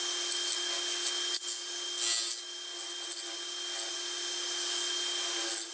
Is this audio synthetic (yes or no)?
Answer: no